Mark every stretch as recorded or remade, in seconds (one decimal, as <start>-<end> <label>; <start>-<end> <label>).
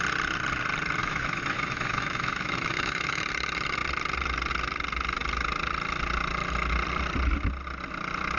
0.0-1.0 recorded; 1.0-3.2 remade; 3.2-8.4 recorded